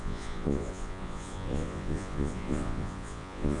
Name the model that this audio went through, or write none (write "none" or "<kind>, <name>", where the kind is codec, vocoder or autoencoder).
vocoder, Vocos